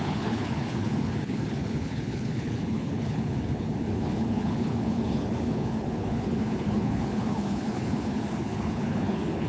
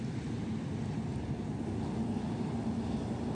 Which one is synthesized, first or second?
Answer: first